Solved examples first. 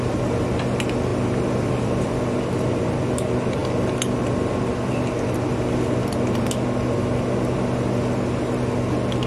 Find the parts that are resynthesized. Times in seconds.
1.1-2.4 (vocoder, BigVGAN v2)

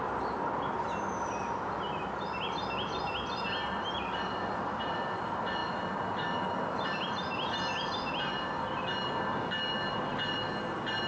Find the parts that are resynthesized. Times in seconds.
none

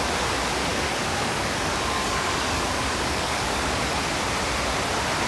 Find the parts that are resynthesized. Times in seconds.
0.7-3.9 (codec, DAC)